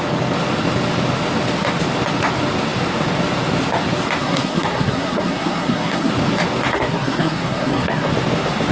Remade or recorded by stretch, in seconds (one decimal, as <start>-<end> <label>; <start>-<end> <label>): 0.0-4.2 recorded; 4.2-6.1 remade; 6.1-6.7 recorded; 6.7-8.1 remade; 8.1-8.7 recorded